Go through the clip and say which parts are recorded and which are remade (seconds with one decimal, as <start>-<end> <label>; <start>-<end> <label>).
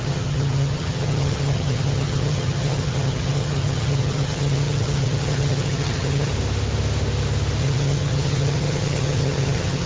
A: 0.0-6.3 remade; 6.3-7.6 recorded; 7.6-9.9 remade